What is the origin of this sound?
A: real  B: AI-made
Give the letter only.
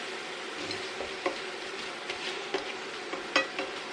A